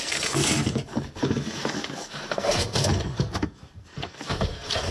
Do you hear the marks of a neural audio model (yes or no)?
yes